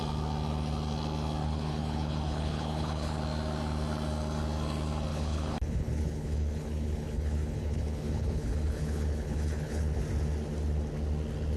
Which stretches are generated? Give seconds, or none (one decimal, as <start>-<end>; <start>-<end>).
1.4-3.2; 5.1-10.0